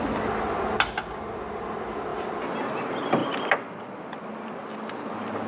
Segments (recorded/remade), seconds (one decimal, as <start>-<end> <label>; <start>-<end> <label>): 0.0-2.1 recorded; 2.1-2.8 remade; 2.8-5.5 recorded